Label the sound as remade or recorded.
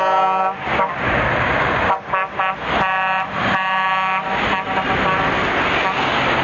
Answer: recorded